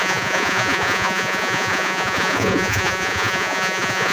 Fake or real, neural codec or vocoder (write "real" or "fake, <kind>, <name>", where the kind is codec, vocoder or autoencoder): fake, vocoder, Vocos